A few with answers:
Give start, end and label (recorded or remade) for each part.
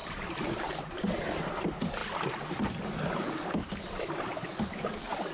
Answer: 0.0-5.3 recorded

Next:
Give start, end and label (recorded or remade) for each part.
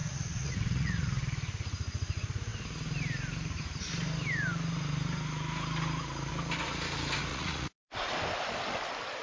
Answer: 0.0-1.2 remade; 1.2-7.3 recorded; 7.3-8.1 remade; 8.1-9.2 recorded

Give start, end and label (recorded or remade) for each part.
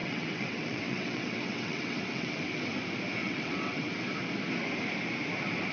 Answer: 0.0-2.6 remade; 2.6-3.2 recorded; 3.2-3.9 remade; 3.9-5.7 recorded